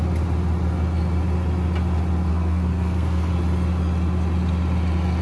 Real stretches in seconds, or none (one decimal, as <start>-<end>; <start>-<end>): 0.0-2.3; 3.3-5.2